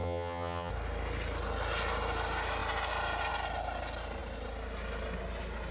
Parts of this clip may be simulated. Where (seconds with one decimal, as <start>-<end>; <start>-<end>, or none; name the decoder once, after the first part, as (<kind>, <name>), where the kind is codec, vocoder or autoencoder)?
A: 0.0-0.7 (vocoder, HiFi-GAN)